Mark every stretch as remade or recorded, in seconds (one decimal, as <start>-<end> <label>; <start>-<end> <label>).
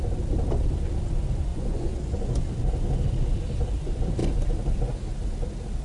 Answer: 0.0-1.5 recorded; 1.5-2.4 remade; 2.4-5.8 recorded